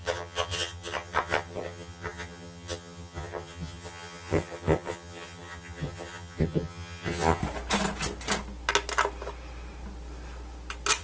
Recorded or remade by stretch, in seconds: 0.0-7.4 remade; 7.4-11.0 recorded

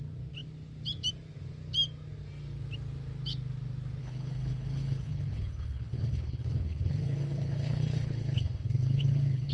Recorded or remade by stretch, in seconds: 0.0-4.0 recorded; 4.0-9.5 remade